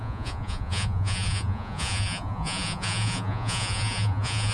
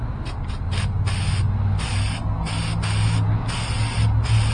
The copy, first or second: first